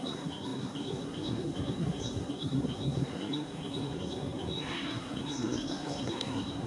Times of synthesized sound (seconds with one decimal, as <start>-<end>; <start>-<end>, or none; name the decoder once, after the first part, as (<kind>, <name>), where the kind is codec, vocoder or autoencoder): 0.0-6.7 (codec, SNAC)